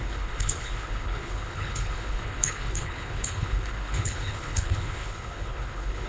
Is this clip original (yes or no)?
no